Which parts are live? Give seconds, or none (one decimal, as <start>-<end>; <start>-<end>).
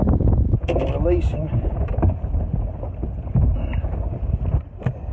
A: 0.8-5.1